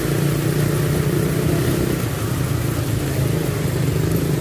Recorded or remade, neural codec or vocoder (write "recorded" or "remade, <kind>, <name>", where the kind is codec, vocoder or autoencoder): recorded